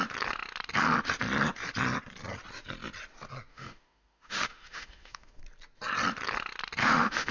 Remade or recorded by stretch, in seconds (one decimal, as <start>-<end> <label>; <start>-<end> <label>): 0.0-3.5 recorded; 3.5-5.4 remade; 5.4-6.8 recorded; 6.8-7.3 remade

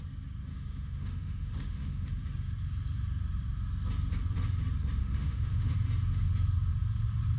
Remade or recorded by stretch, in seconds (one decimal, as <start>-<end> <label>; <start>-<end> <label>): 0.0-0.5 recorded; 0.5-2.1 remade; 2.1-5.0 recorded; 5.0-5.7 remade; 5.7-7.4 recorded

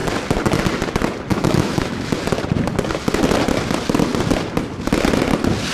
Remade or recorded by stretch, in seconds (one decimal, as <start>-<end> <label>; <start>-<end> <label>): 0.0-1.3 recorded; 1.3-2.1 remade; 2.1-5.7 recorded